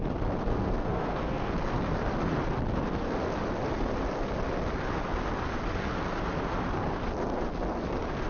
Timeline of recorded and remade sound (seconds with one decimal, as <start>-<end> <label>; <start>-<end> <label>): 0.0-0.5 recorded; 0.5-1.5 remade; 1.5-8.3 recorded